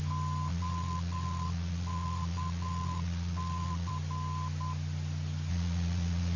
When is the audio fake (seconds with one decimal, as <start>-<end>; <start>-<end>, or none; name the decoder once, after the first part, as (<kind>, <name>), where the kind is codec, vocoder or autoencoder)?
0.5-3.9 (vocoder, Vocos); 5.5-6.4